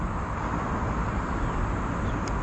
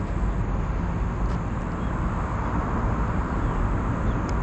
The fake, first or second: first